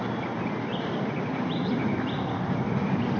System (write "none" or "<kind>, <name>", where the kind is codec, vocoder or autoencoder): none